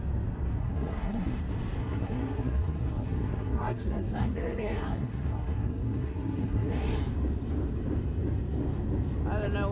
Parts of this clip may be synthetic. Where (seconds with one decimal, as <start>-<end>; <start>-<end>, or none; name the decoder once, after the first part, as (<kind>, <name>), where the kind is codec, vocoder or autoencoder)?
0.6-1.4 (codec, SNAC); 1.8-7.0